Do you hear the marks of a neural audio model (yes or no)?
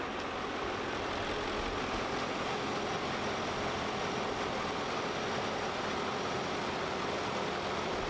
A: no